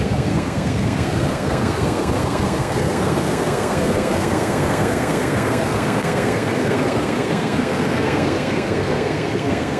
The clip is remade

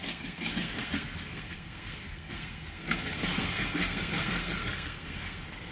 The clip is remade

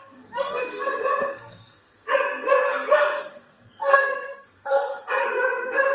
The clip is remade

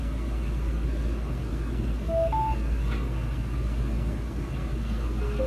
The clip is remade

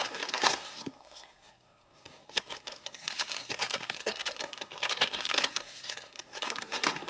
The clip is remade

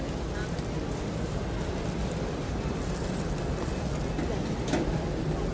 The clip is recorded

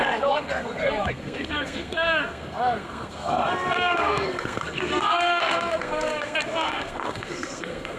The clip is remade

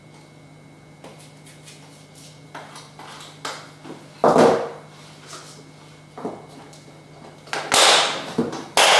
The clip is recorded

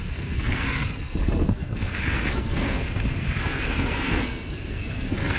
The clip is remade